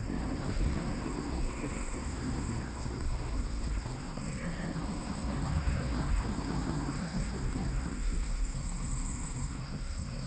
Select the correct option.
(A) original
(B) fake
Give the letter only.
B